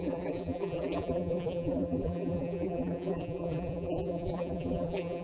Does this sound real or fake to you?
fake